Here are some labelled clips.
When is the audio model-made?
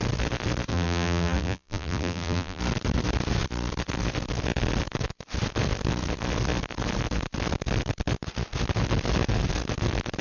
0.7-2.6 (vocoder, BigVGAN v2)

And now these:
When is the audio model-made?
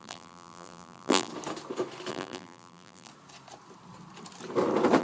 0.0-1.3 (vocoder, BigVGAN v2); 2.1-3.1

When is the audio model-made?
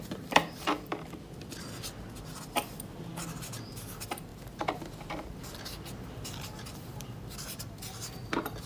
0.0-0.9 (vocoder, BigVGAN v2); 3.7-8.7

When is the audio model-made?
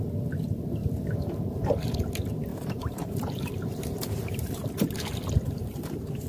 2.5-6.3 (vocoder, BigVGAN v2)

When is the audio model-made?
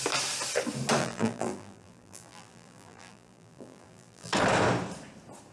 1.0-4.3 (vocoder, BigVGAN v2)